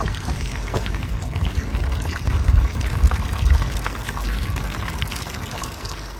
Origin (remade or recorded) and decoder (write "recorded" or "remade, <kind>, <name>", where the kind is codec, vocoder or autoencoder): remade, codec, SNAC